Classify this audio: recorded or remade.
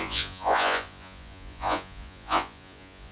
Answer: remade